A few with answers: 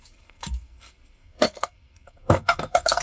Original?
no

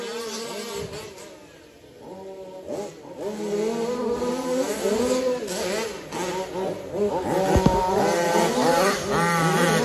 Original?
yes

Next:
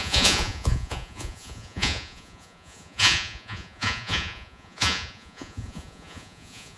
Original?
no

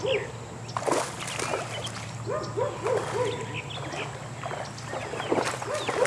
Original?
yes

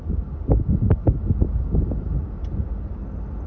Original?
yes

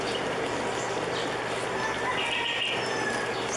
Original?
yes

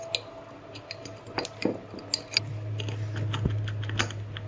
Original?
yes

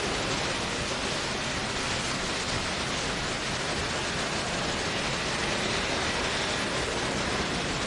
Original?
yes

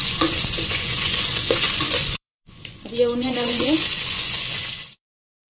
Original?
no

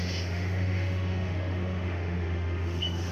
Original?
no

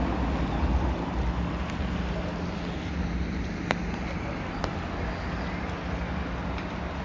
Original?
yes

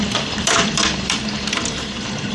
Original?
no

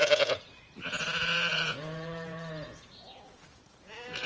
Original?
no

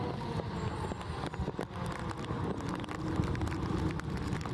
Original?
yes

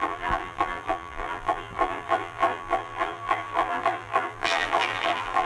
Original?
no